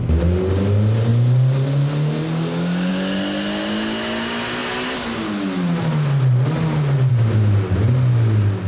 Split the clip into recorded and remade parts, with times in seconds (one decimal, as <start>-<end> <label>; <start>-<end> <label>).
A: 0.0-8.7 recorded